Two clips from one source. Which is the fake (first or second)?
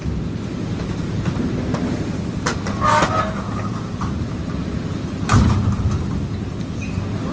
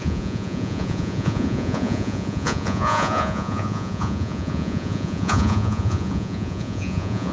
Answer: second